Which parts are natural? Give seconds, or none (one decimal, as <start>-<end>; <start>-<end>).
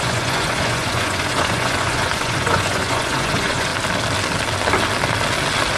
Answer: 3.7-5.8